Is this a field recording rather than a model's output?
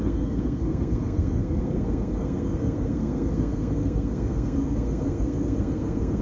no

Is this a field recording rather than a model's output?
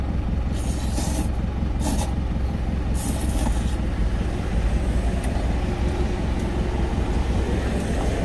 yes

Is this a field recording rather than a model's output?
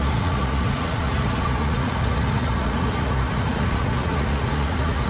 no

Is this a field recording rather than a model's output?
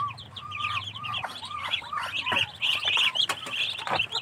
no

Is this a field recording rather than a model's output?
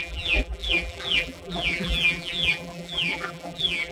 no